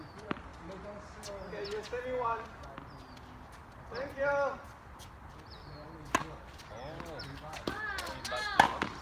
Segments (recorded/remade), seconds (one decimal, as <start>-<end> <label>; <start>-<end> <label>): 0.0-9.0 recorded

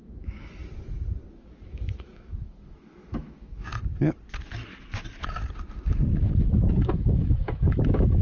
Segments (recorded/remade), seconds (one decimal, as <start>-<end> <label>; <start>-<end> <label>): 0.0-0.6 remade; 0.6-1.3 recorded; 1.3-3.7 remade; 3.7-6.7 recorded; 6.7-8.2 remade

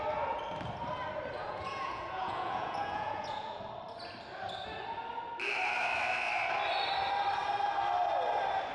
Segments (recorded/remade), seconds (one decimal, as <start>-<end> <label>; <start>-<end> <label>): 0.0-1.4 recorded; 1.4-3.6 remade; 3.6-8.7 recorded

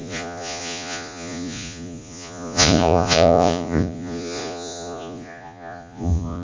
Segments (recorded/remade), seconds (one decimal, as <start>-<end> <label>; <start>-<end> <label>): 0.0-6.4 remade